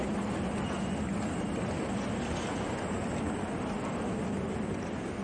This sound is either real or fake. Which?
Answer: real